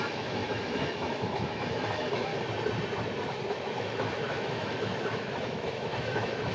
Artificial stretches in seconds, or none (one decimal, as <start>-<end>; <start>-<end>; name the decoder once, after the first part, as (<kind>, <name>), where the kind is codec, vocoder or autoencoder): 0.0-2.3 (autoencoder, DAC-VAE); 3.5-6.5